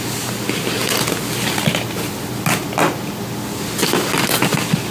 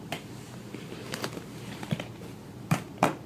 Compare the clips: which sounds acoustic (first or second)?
first